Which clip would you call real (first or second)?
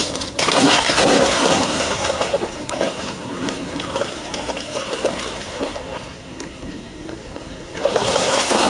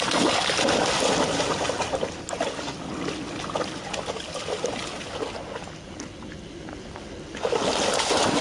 second